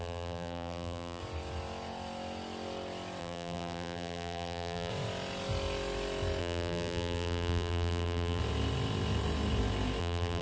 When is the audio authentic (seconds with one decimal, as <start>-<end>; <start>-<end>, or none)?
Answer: 1.2-3.2; 4.9-6.4; 8.4-10.0